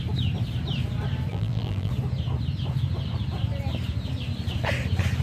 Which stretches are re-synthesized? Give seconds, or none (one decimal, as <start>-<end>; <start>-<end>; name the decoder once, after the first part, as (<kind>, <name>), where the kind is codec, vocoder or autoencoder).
1.3-1.9 (vocoder, BigVGAN v2)